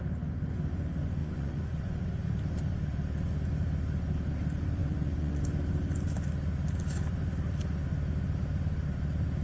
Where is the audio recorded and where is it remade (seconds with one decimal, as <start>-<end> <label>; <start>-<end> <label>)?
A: 0.0-1.2 recorded; 1.2-2.0 remade; 2.0-4.8 recorded; 4.8-5.4 remade; 5.4-9.4 recorded